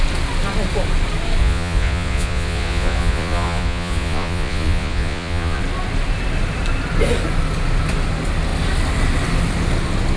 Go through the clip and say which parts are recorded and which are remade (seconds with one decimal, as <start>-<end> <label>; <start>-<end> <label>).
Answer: 0.0-1.4 recorded; 1.4-5.6 remade; 5.6-10.2 recorded